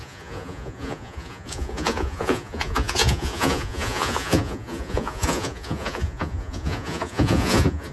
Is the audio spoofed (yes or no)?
yes